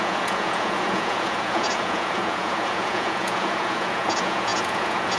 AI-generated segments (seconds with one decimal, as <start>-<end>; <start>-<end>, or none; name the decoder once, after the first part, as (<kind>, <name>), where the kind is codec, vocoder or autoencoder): 0.0-5.2 (vocoder, Vocos)

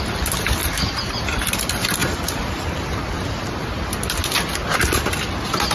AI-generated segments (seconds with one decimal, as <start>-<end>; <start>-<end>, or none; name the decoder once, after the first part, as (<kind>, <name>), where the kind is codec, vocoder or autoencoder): 0.6-1.6 (vocoder, BigVGAN v2); 2.0-3.8; 4.6-5.1

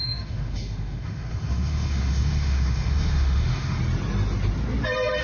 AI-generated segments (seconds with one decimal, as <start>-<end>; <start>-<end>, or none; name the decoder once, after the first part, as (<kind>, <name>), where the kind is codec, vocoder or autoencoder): 0.0-3.8 (autoencoder, DAC-VAE)

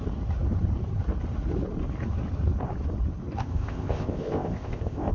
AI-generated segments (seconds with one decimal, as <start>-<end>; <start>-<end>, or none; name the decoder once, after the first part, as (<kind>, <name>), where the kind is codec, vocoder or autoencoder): 3.4-5.1 (codec, ZipCodec)

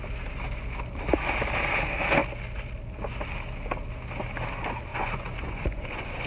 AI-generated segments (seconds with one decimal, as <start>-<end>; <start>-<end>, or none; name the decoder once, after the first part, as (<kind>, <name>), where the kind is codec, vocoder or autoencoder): 4.9-6.3 (vocoder, Vocos)

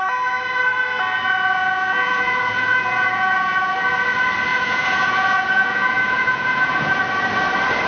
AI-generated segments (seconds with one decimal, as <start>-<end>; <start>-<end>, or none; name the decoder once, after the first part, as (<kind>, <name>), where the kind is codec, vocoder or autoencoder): 1.6-3.7 (vocoder, Vocos); 4.5-7.0

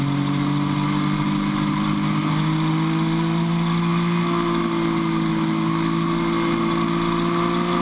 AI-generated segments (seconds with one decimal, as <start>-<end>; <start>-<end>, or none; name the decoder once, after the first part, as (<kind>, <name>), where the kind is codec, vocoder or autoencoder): none

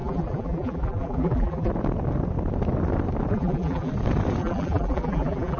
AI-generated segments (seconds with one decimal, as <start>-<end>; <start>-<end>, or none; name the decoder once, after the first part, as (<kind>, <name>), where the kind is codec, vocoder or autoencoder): 0.0-1.7 (vocoder, BigVGAN v2); 3.3-3.9; 4.4-5.6